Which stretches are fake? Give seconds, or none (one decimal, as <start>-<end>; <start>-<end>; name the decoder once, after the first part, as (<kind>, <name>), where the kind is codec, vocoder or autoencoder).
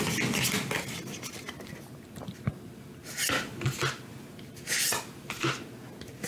none